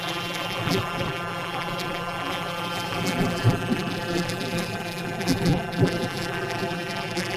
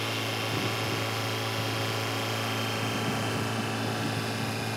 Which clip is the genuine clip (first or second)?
second